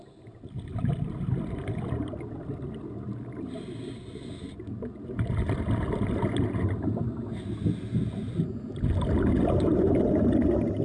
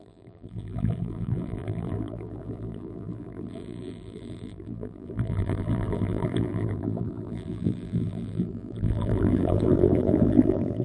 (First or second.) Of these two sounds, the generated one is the second